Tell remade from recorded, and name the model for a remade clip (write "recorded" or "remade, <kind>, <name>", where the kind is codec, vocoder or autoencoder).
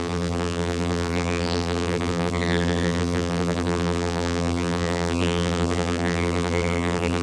remade, vocoder, BigVGAN v2